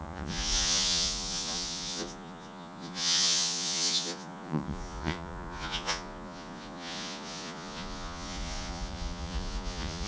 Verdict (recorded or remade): remade